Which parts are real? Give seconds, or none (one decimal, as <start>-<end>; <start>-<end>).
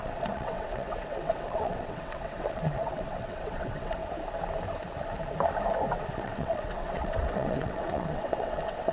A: 4.0-6.0